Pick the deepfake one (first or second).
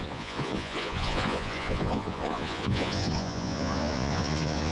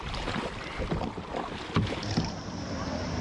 first